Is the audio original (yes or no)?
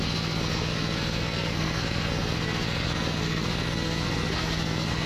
no